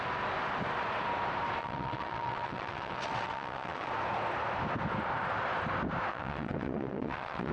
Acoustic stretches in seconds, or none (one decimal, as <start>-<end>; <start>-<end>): 0.0-1.6; 3.9-6.1